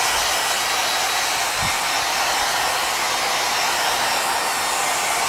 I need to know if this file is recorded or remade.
recorded